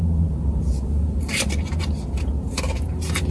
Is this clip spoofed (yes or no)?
yes